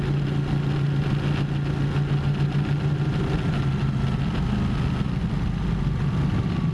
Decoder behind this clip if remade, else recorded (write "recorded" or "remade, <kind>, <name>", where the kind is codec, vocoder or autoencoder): recorded